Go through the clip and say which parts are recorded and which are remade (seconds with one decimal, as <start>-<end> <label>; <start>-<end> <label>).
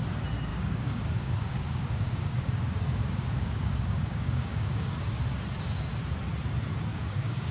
0.0-0.5 recorded; 0.5-5.0 remade; 5.0-6.9 recorded; 6.9-7.5 remade